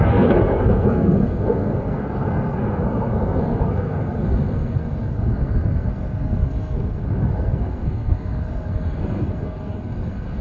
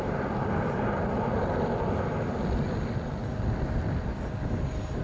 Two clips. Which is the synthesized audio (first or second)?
first